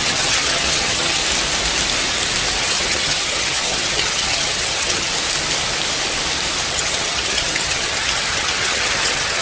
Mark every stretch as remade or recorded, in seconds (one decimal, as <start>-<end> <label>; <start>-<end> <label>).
0.0-1.2 remade; 1.2-2.6 recorded; 2.6-5.1 remade; 5.1-6.7 recorded; 6.7-9.4 remade